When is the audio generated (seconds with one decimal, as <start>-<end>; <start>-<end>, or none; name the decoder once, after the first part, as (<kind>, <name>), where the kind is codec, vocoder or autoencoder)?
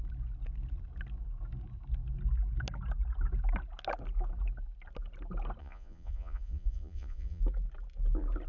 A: 5.6-7.4 (vocoder, Vocos)